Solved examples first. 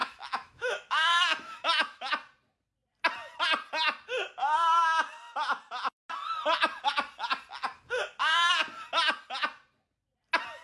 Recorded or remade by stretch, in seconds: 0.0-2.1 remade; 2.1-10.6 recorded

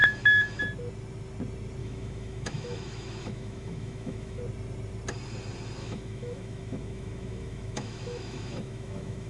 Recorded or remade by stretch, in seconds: 0.0-0.6 remade; 0.6-1.8 recorded; 1.8-4.4 remade; 4.4-5.8 recorded; 5.8-9.3 remade

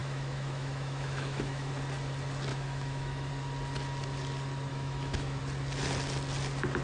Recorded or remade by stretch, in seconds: 0.0-1.7 remade; 1.7-2.5 recorded; 2.5-3.3 remade; 3.3-4.7 recorded; 4.7-5.4 remade; 5.4-6.8 recorded

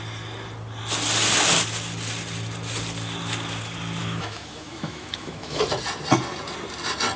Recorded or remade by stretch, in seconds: 0.0-4.0 recorded; 4.0-5.6 remade; 5.6-7.2 recorded

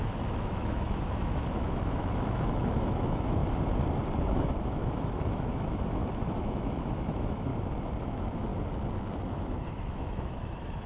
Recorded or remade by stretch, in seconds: 0.0-3.4 remade; 3.4-4.2 recorded; 4.2-7.5 remade; 7.5-8.0 recorded; 8.0-8.5 remade; 8.5-9.2 recorded; 9.2-10.9 remade

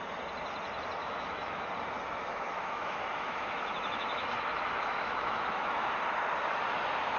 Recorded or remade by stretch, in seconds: 0.0-1.0 recorded; 1.0-1.7 remade; 1.7-2.2 recorded; 2.2-5.9 remade; 5.9-7.2 recorded

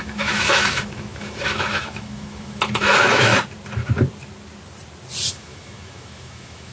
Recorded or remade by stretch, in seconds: 0.0-3.3 remade; 3.3-5.3 recorded; 5.3-6.7 remade